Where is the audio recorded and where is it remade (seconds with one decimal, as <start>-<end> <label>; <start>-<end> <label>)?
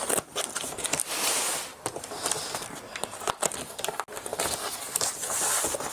0.0-1.7 recorded; 1.7-2.3 remade; 2.3-4.3 recorded; 4.3-5.1 remade; 5.1-5.9 recorded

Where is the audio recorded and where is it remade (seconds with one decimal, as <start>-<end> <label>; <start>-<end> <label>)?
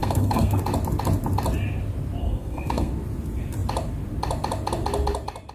0.0-0.6 remade; 0.6-2.2 recorded; 2.2-2.9 remade; 2.9-5.5 recorded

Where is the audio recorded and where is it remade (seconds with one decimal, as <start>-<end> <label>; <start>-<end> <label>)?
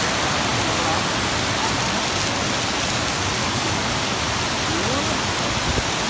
0.0-3.4 recorded; 3.4-4.2 remade; 4.2-6.1 recorded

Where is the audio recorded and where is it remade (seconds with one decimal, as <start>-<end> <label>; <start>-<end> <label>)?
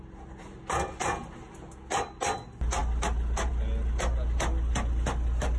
0.0-5.6 recorded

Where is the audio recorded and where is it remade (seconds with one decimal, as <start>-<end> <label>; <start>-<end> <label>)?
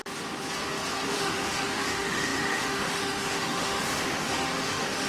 0.0-1.1 recorded; 1.1-5.1 remade